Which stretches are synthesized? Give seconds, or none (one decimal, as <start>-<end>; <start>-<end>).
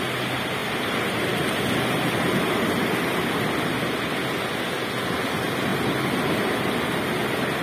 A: 0.6-1.6; 5.7-6.6